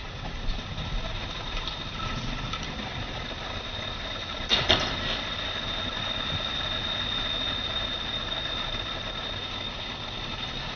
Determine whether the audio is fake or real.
real